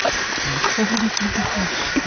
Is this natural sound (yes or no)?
yes